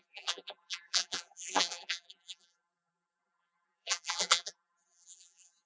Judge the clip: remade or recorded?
remade